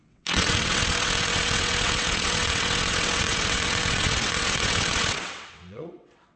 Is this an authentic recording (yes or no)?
no